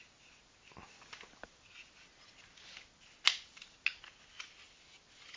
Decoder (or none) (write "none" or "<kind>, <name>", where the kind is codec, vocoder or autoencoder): none